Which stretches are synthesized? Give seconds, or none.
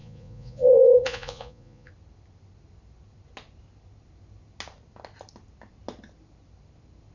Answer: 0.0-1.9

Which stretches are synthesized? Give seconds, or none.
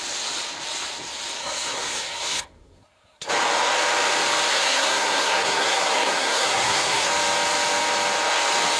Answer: 1.4-3.3; 4.5-7.1